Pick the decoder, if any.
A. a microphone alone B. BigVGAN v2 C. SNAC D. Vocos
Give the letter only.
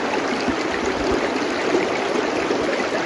A